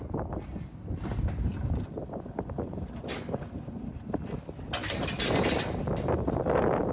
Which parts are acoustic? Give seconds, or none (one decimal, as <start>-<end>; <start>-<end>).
0.0-6.9